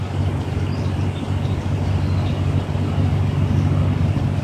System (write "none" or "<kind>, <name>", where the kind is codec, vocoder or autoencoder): codec, DAC